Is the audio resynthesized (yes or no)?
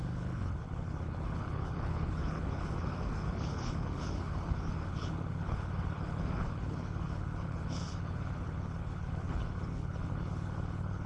yes